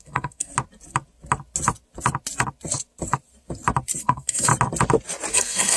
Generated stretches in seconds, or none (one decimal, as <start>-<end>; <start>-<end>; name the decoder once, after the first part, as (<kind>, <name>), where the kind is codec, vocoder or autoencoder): 0.0-0.5 (codec, SNAC); 4.0-4.5; 5.3-5.8